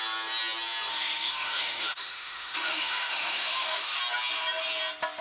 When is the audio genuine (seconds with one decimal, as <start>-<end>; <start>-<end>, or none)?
0.0-0.9; 4.0-5.2